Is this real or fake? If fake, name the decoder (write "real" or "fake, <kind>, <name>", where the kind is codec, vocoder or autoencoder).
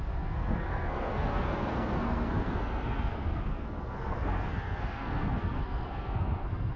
fake, codec, SNAC